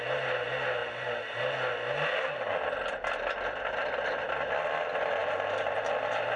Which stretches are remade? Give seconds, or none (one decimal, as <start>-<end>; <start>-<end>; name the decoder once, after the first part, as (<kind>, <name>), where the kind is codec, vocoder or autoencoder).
none